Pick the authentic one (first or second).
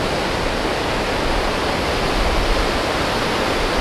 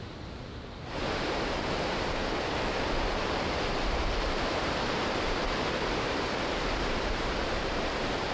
first